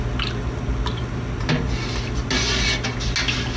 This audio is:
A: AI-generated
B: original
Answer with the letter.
B